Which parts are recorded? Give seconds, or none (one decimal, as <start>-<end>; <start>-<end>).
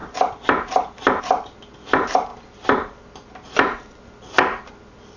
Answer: 0.0-5.2